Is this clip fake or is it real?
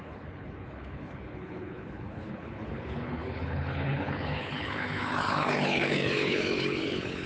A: fake